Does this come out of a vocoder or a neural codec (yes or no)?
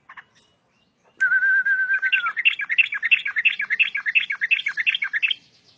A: no